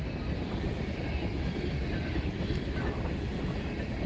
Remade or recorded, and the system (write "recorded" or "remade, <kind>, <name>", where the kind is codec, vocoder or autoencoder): recorded